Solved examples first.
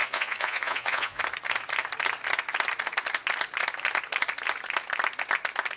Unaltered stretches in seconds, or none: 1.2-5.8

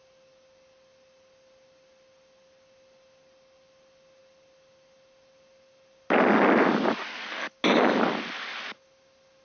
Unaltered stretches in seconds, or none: 0.0-9.4

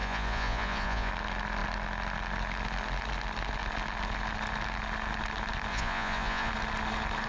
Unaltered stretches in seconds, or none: 1.1-5.7; 6.5-7.3

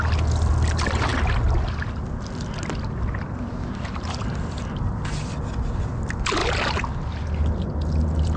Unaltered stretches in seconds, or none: 0.0-8.4